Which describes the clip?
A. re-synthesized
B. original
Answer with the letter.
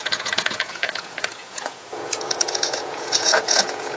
A